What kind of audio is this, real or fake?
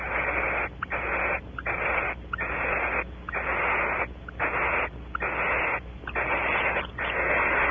real